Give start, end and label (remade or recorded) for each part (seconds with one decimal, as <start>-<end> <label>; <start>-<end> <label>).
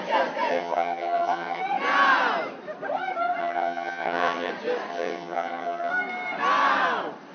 0.0-0.5 recorded; 0.5-1.6 remade; 1.6-3.4 recorded; 3.4-4.5 remade; 4.5-4.9 recorded; 4.9-5.9 remade; 5.9-7.3 recorded